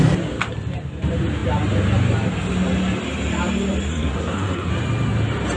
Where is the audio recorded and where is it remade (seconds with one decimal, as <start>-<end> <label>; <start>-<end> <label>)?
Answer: 0.0-3.9 recorded; 3.9-4.7 remade; 4.7-5.6 recorded